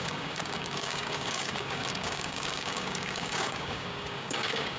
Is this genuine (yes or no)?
no